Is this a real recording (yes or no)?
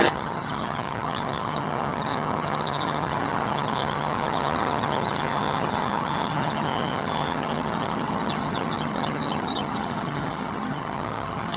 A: no